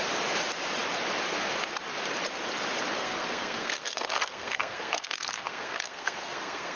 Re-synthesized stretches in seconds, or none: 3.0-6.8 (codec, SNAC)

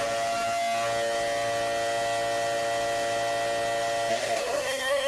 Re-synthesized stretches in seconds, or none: 4.1-5.1 (codec, SNAC)

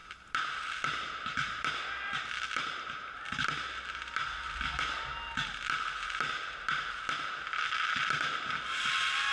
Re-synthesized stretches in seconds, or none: none

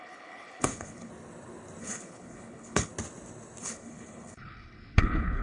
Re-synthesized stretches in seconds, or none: 0.0-1.1 (codec, HILCodec); 1.8-2.9; 3.6-5.4

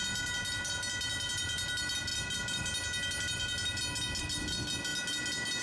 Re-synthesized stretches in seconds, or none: none

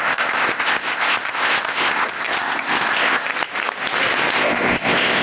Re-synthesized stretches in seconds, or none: 0.0-3.3 (codec, ZipCodec); 4.3-5.2

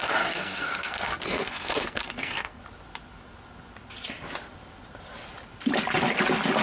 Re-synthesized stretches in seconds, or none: 0.0-2.6 (codec, SNAC)

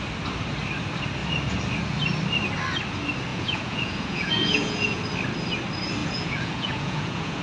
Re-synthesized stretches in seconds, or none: 3.3-5.0 (vocoder, Vocos); 6.0-7.4